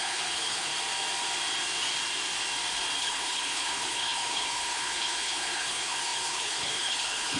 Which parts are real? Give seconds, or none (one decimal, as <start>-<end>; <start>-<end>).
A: 0.7-3.0